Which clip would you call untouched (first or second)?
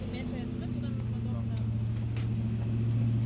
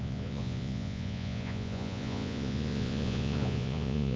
first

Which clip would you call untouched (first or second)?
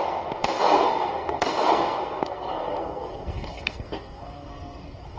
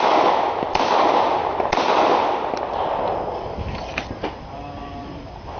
second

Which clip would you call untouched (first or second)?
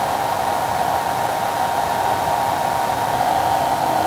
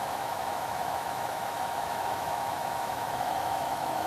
first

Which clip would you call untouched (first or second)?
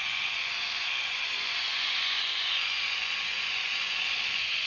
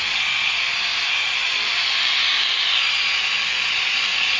second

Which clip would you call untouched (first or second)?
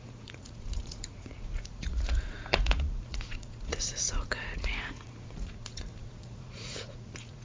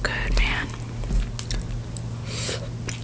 second